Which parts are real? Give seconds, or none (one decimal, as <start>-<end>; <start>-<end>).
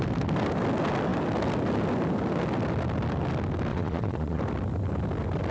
0.0-3.7; 4.4-5.5